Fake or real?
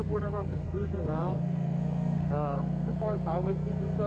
fake